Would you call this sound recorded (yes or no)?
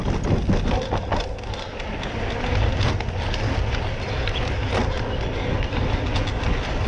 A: yes